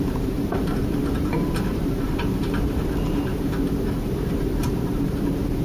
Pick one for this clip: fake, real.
fake